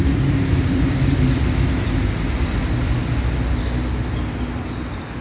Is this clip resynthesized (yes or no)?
no